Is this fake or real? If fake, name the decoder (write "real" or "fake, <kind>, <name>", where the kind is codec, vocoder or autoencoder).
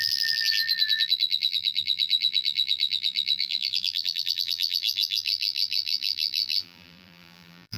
fake, vocoder, BigVGAN v2